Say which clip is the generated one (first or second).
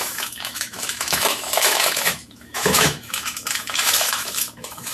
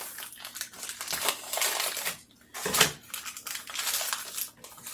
first